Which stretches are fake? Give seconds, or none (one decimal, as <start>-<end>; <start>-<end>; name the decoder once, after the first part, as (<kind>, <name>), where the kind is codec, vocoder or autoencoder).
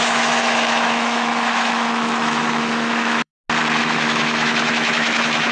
0.0-3.3 (autoencoder, DAC-VAE); 3.8-5.5